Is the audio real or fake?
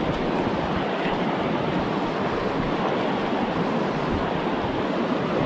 real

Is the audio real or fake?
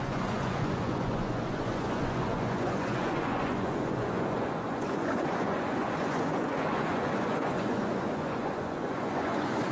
fake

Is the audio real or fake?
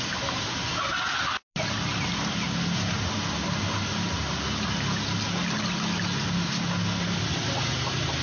real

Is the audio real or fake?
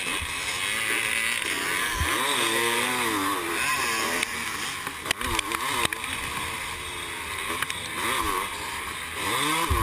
real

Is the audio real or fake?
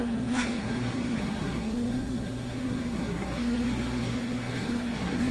fake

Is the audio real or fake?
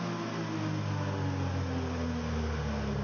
real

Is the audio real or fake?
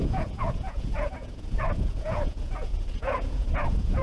fake